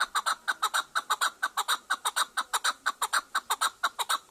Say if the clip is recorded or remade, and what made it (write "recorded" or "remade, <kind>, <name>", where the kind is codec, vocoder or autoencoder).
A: recorded